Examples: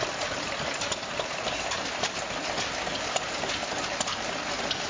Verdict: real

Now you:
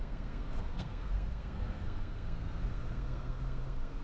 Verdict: fake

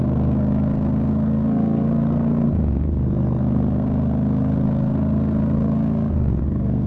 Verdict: fake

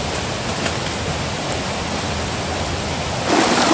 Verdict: real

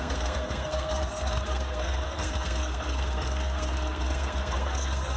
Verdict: fake